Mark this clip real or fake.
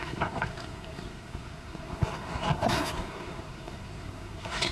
fake